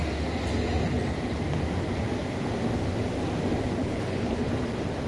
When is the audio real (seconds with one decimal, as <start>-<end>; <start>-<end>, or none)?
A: 0.0-3.8; 4.5-5.1